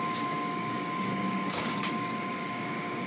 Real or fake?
fake